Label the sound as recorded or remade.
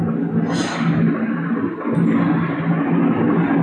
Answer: recorded